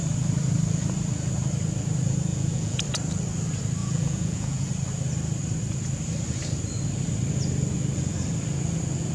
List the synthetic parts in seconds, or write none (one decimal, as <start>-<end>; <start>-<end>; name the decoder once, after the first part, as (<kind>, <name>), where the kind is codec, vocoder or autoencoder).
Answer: 2.3-2.8 (vocoder, Vocos); 3.8-4.7